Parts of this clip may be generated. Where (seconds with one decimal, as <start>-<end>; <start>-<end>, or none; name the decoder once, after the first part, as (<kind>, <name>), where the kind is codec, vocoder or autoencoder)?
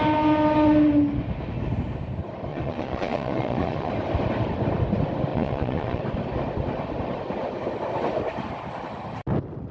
2.5-3.9 (vocoder, Vocos); 5.3-6.0